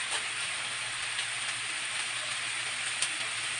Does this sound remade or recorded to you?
recorded